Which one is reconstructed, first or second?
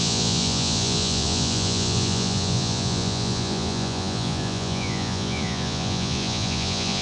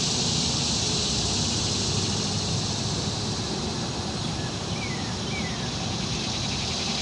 first